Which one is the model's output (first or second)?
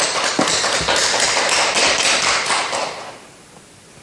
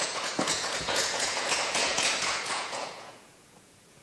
second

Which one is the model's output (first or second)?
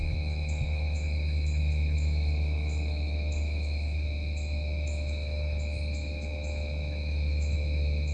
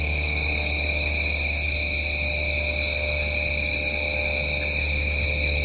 first